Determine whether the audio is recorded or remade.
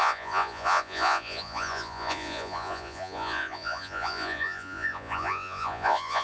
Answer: remade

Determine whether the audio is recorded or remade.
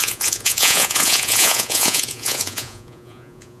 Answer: remade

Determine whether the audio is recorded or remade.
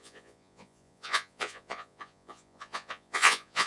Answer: remade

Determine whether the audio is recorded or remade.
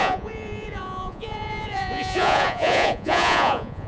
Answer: remade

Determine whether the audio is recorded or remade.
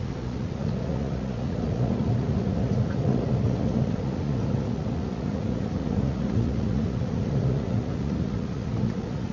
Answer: remade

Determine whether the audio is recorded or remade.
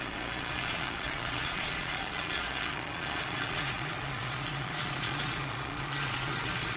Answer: remade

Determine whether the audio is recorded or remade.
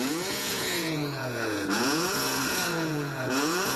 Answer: remade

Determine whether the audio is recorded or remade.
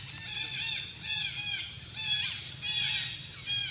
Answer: recorded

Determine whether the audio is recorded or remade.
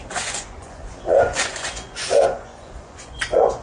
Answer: remade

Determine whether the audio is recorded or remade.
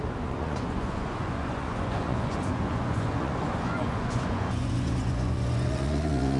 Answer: remade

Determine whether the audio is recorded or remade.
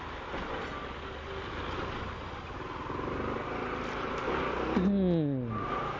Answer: recorded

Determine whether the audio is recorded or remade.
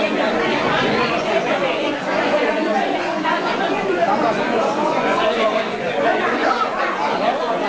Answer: remade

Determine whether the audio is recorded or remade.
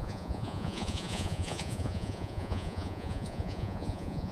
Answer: remade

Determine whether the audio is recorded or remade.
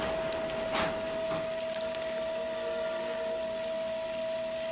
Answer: recorded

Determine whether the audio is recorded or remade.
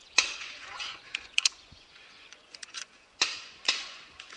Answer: remade